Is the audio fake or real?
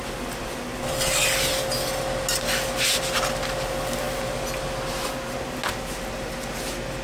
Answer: real